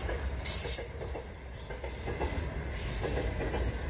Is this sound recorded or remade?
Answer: recorded